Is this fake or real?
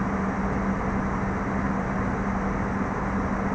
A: real